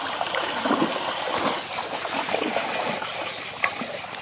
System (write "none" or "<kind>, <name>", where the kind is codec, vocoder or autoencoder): none